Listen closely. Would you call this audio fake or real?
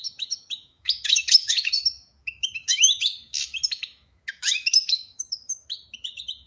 fake